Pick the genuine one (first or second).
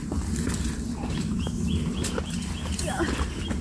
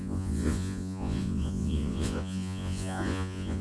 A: first